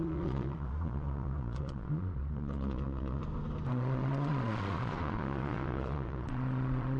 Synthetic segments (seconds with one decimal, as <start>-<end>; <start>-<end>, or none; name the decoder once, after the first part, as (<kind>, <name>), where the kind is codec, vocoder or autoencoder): 0.0-3.2 (vocoder, Vocos); 3.7-7.0